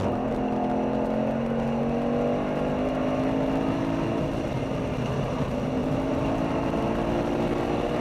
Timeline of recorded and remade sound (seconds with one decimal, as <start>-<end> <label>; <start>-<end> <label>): 0.0-5.8 recorded; 5.8-6.5 remade; 6.5-8.0 recorded